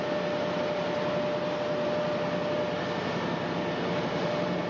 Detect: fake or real real